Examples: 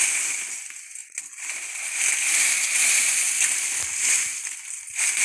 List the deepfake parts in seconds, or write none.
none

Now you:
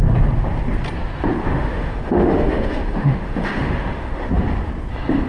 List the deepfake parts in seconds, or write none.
1.4-4.3

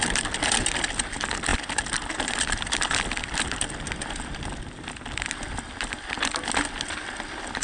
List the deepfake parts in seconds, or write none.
none

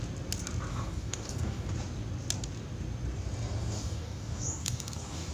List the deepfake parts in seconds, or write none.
0.7-1.7; 3.6-5.3